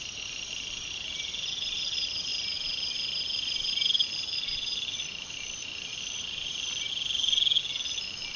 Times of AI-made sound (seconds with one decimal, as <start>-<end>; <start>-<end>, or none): 2.3-6.9

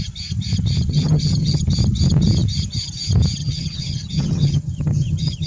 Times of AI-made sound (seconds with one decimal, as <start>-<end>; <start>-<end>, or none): 0.9-1.6; 3.4-5.5

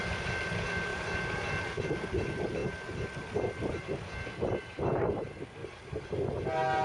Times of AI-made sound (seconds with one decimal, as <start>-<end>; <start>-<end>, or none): 0.9-1.6; 5.6-6.2

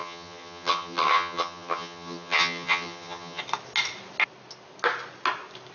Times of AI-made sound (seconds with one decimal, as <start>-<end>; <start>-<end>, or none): 0.0-3.4

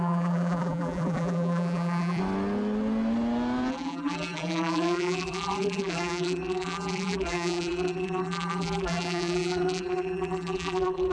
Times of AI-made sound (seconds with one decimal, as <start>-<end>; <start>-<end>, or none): 0.0-2.2; 3.7-11.1